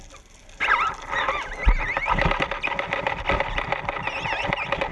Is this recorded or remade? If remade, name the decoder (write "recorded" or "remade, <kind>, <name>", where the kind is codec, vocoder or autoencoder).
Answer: recorded